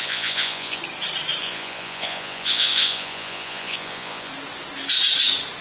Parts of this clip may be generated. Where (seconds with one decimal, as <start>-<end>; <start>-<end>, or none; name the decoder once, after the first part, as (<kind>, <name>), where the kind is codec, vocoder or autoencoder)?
0.0-0.8 (vocoder, Vocos); 1.4-4.3